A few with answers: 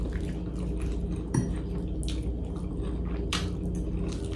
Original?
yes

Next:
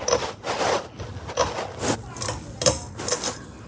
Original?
yes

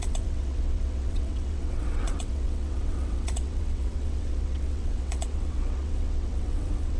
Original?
no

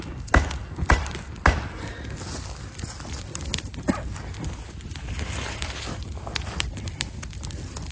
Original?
yes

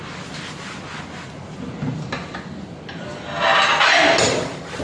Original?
yes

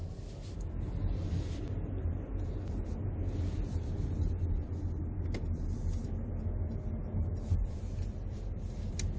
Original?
yes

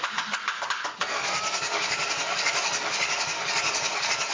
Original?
no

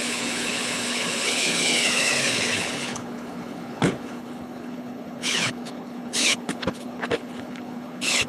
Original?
no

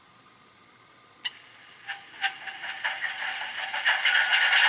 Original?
yes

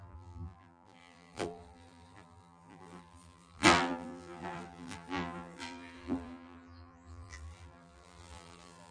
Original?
no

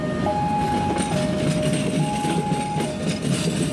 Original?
yes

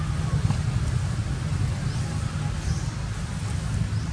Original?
yes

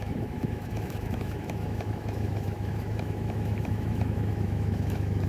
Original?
no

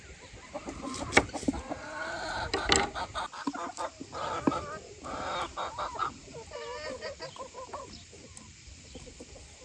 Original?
yes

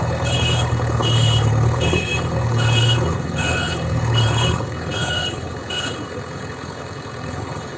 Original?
no